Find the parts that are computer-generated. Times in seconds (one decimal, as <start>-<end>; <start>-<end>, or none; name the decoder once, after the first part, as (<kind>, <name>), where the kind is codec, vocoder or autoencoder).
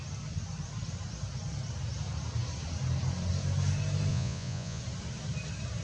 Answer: 4.1-4.8 (vocoder, Vocos)